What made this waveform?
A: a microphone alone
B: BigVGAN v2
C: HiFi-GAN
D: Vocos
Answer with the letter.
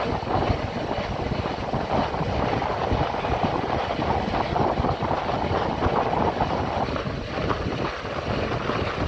A